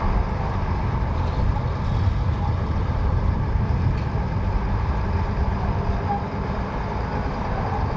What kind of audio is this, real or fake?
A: real